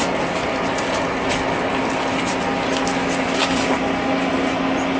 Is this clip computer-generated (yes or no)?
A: no